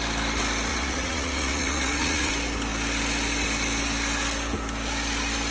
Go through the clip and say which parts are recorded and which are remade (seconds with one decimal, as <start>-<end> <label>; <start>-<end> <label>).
0.0-0.7 recorded; 0.7-2.3 remade; 2.3-5.5 recorded